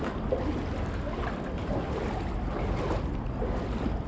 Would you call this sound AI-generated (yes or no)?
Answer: no